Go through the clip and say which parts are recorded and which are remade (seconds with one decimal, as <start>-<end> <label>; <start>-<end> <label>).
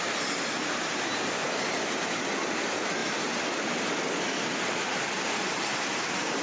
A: 0.0-5.7 recorded; 5.7-6.4 remade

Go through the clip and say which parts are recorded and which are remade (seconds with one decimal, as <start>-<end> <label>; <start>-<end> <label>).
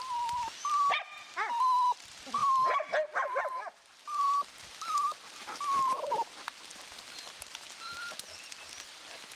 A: 0.0-9.4 recorded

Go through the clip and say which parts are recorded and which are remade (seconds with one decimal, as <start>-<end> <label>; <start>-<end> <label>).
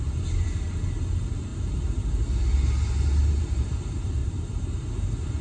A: 0.0-4.2 recorded; 4.2-4.8 remade; 4.8-5.4 recorded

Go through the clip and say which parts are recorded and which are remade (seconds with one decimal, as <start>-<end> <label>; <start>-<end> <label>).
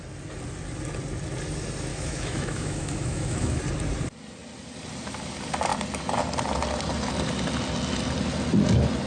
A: 0.0-1.9 recorded; 1.9-3.6 remade; 3.6-9.1 recorded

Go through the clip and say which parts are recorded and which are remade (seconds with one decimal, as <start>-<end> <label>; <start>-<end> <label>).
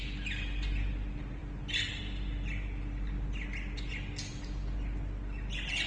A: 0.0-1.4 recorded; 1.4-2.0 remade; 2.0-5.9 recorded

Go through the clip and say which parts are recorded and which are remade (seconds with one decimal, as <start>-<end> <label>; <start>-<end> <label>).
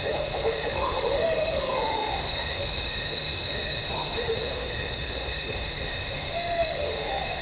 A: 0.0-7.4 remade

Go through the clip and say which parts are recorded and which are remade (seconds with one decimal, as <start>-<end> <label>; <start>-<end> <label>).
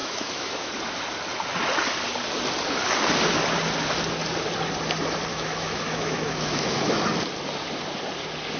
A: 0.0-0.7 remade; 0.7-5.3 recorded; 5.3-7.0 remade; 7.0-8.6 recorded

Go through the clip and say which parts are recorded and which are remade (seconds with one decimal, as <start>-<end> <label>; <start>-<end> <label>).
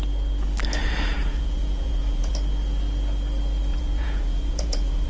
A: 0.0-0.8 recorded; 0.8-2.3 remade; 2.3-3.7 recorded; 3.7-5.1 remade